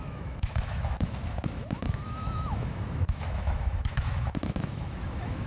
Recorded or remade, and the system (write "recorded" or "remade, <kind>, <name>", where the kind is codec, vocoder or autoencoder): remade, autoencoder, DAC-VAE